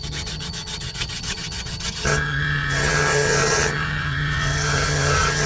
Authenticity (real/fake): fake